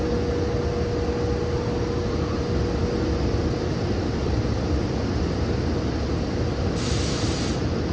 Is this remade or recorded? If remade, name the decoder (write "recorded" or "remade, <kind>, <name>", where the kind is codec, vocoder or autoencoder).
recorded